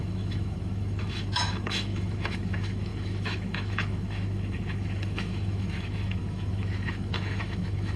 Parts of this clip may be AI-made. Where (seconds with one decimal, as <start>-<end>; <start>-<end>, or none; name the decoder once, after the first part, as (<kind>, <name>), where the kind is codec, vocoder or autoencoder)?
0.0-8.0 (autoencoder, DAC-VAE)